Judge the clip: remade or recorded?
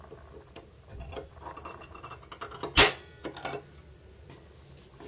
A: recorded